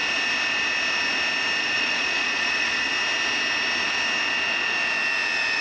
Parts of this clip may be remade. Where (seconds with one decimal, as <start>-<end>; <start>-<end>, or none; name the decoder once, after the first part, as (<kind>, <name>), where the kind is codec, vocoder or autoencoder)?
1.6-2.9 (vocoder, Vocos)